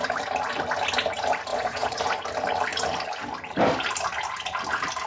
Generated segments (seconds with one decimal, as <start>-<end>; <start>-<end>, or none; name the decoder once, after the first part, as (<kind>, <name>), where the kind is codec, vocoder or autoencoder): 1.5-2.0 (vocoder, Vocos)